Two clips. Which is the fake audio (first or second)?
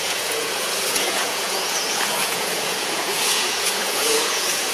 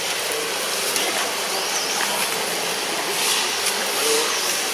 first